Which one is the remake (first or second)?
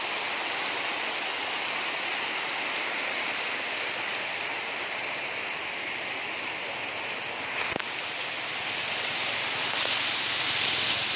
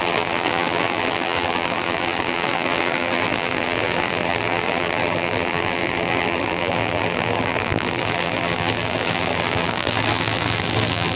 second